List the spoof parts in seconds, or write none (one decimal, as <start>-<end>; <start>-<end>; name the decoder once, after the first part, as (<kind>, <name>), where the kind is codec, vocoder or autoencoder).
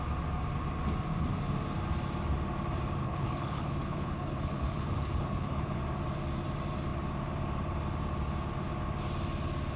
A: 3.0-5.8 (codec, HILCodec)